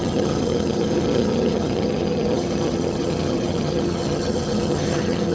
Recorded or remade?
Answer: remade